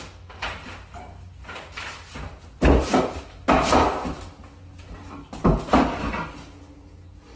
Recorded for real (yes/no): yes